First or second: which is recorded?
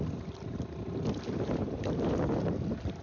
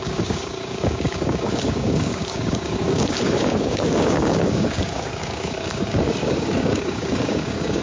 first